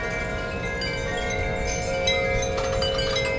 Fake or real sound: real